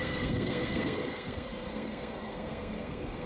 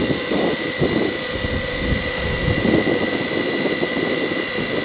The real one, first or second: second